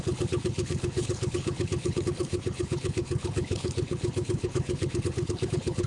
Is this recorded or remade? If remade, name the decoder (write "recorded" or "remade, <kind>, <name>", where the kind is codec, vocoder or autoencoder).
remade, codec, HILCodec